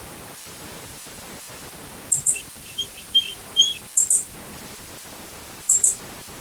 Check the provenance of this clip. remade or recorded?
remade